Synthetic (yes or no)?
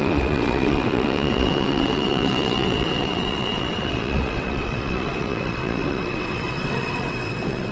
yes